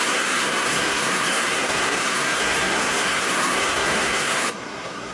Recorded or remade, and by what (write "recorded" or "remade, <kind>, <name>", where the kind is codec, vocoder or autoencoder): remade, codec, SNAC